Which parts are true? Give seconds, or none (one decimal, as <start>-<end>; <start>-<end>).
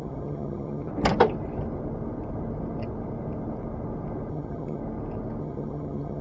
0.9-4.3; 4.8-5.4